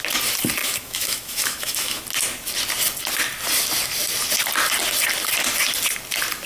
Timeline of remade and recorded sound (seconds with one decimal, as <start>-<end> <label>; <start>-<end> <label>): 0.0-0.6 recorded; 0.6-2.0 remade; 2.0-6.5 recorded